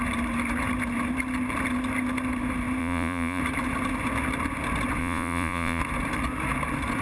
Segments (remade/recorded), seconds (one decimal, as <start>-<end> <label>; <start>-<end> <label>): 0.0-2.8 recorded; 2.8-3.4 remade; 3.4-5.0 recorded; 5.0-5.8 remade; 5.8-7.0 recorded